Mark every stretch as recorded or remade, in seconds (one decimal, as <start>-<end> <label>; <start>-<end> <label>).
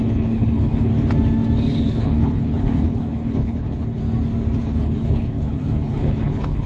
0.0-0.9 remade; 0.9-1.8 recorded; 1.8-4.0 remade; 4.0-4.6 recorded; 4.6-6.7 remade